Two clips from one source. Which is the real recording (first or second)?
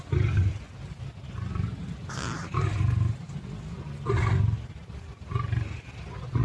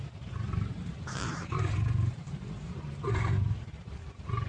first